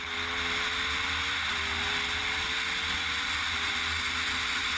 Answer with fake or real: real